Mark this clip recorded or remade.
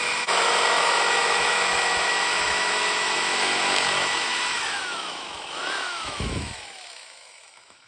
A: remade